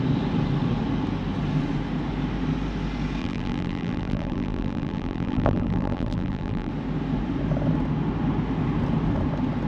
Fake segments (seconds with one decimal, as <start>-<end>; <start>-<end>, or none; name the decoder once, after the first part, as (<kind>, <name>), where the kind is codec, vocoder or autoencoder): 3.2-6.7 (vocoder, BigVGAN v2)